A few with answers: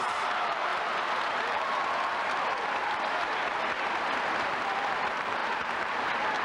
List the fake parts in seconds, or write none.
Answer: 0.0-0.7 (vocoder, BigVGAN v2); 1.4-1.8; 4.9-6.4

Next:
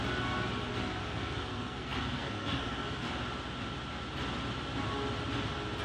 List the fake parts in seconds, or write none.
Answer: 0.7-3.1 (codec, SNAC)

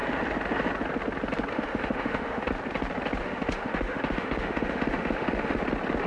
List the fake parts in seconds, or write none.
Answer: 1.5-2.5 (autoencoder, DAC-VAE); 3.2-5.6

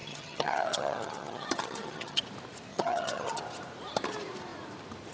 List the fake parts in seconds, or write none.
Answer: 0.0-2.2 (vocoder, HiFi-GAN); 2.7-3.4

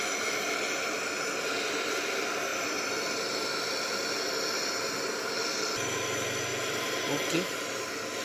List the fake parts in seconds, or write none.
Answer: 2.5-4.2 (vocoder, BigVGAN v2); 6.5-7.3

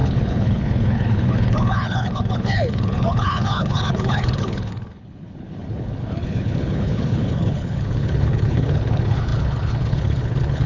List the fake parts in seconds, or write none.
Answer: 0.0-10.7 (codec, HILCodec)

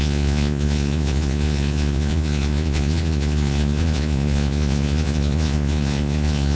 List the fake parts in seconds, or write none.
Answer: 0.0-6.5 (vocoder, Vocos)

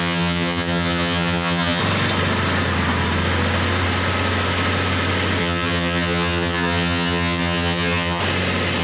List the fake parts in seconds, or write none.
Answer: 0.0-1.8 (vocoder, HiFi-GAN); 5.4-8.2